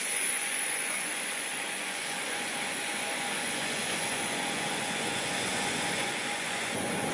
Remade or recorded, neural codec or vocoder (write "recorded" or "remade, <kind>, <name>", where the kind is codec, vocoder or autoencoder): remade, vocoder, Vocos